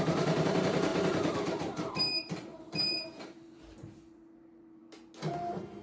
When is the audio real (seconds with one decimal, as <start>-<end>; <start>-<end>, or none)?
4.8-5.3